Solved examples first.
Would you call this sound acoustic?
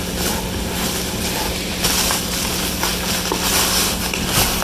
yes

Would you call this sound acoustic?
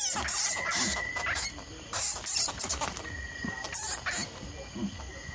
yes